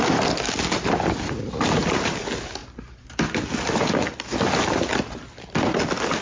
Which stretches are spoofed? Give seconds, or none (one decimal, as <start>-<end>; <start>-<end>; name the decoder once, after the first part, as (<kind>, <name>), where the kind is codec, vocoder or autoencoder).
none